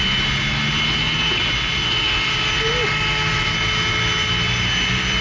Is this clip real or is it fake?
real